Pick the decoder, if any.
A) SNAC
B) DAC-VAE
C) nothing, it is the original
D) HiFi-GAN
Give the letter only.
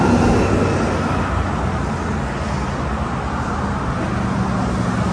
C